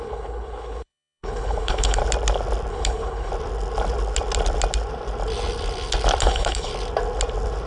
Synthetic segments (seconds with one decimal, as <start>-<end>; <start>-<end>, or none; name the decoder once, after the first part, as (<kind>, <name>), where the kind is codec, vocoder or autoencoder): 0.0-2.0 (codec, HILCodec); 2.7-3.3; 6.2-6.7